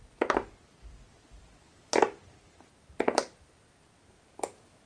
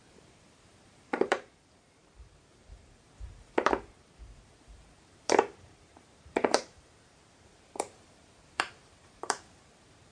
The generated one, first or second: second